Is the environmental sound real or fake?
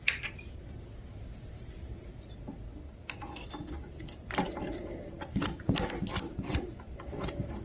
real